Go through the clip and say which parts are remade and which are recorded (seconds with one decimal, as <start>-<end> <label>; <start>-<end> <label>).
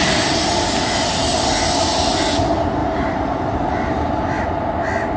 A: 0.0-2.8 recorded; 2.8-4.4 remade; 4.4-5.2 recorded